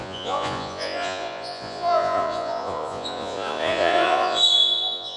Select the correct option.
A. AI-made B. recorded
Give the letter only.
A